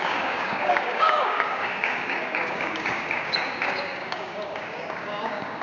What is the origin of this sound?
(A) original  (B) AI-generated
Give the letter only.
B